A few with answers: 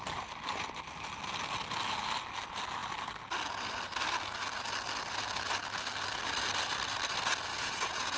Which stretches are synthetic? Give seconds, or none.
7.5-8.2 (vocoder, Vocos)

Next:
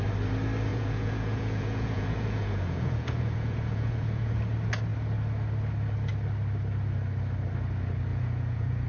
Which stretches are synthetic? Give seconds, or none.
0.7-4.4 (vocoder, Vocos); 8.1-8.9

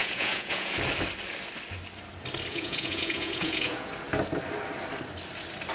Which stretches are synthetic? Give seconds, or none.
0.0-0.7 (vocoder, Vocos); 2.5-3.9

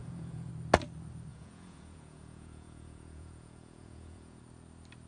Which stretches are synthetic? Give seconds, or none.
0.0-0.5 (vocoder, Vocos); 1.3-4.4

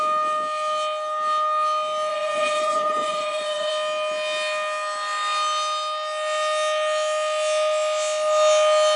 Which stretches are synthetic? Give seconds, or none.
2.1-3.7 (vocoder, Vocos)

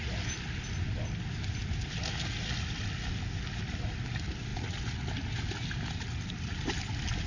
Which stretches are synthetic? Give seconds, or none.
none

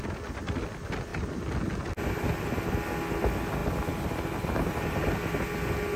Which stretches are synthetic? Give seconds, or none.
none